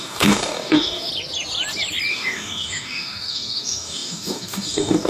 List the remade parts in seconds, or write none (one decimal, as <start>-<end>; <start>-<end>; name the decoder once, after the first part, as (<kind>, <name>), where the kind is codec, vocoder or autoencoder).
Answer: 0.0-1.1 (codec, DAC); 2.1-5.1